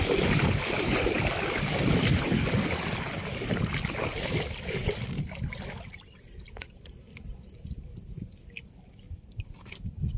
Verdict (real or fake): real